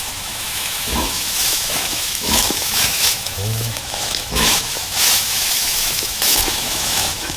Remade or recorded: remade